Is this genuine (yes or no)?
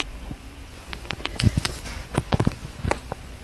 no